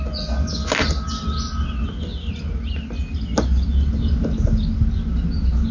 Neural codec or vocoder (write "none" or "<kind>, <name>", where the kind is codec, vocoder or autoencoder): none